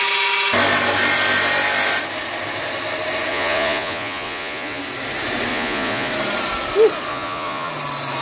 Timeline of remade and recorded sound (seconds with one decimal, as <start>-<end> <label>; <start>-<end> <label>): 0.0-3.3 recorded; 3.3-4.8 remade; 4.8-5.5 recorded; 5.5-6.1 remade; 6.1-7.1 recorded; 7.1-7.7 remade; 7.7-8.2 recorded